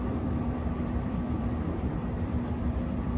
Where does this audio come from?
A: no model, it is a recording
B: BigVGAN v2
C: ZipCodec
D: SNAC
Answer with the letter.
B